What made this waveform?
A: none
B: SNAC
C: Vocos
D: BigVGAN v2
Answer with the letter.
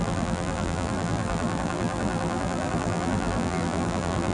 D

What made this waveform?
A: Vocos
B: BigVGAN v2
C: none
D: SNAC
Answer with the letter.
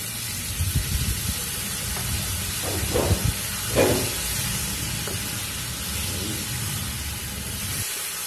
C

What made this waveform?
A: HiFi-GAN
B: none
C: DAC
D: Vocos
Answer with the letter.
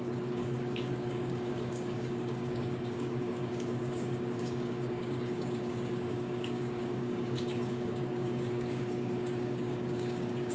C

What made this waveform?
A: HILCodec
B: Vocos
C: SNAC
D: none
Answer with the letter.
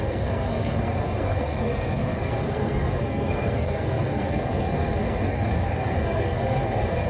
C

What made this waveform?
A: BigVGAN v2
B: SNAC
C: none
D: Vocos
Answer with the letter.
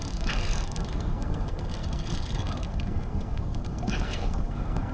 B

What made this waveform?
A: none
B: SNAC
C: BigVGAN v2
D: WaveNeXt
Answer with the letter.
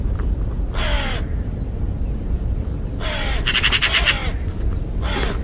A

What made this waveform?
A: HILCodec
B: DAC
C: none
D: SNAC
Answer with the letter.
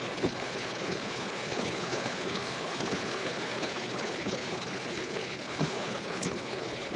A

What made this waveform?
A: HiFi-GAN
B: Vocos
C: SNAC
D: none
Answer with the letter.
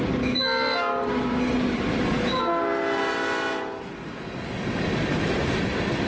D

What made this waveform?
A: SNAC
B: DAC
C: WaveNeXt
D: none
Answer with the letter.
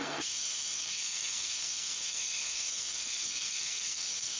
A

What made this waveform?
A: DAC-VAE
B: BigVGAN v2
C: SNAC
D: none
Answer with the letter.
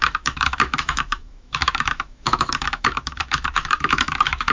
A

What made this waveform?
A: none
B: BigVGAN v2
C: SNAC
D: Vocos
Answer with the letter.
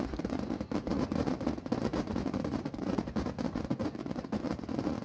D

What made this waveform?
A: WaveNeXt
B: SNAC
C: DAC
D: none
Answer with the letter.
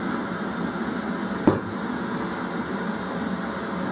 D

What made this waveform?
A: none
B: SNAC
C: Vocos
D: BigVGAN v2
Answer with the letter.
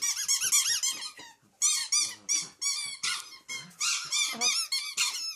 A